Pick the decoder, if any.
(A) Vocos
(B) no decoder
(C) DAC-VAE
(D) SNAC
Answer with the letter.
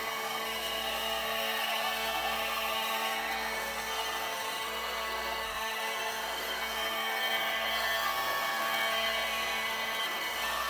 D